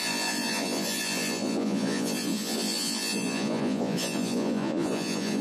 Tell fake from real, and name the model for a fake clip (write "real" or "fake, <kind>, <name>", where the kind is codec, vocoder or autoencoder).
fake, vocoder, Vocos